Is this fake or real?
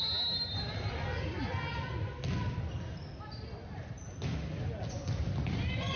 real